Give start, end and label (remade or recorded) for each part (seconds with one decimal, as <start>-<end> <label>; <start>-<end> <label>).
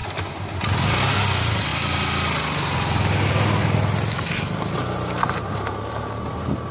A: 0.0-6.7 recorded